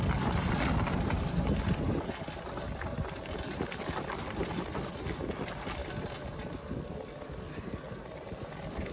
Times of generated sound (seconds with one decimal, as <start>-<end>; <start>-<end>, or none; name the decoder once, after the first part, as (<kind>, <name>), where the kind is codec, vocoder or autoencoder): none